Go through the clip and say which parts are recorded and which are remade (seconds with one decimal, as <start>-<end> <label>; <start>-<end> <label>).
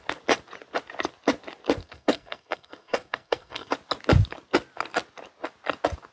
0.0-1.8 recorded; 1.8-3.7 remade; 3.7-6.1 recorded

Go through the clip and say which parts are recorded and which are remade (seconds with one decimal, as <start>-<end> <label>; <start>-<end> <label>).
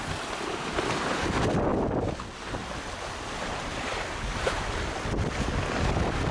0.0-6.3 recorded